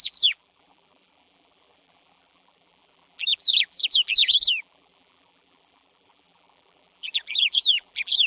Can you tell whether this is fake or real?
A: fake